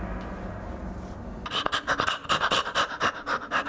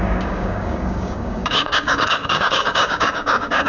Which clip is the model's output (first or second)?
second